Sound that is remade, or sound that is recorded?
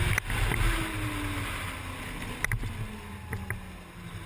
recorded